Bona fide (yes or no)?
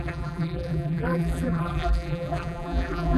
no